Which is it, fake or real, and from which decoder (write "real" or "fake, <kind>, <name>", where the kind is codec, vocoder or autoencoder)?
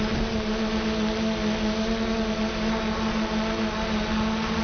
real